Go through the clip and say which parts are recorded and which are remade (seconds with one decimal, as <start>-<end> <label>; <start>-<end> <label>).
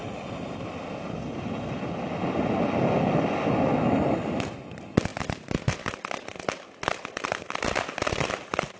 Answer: 0.0-8.8 recorded